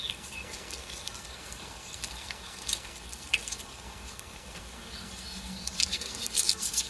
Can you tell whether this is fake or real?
fake